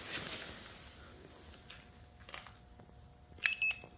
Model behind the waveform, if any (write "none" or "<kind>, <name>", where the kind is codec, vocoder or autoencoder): none